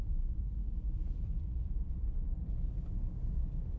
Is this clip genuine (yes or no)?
no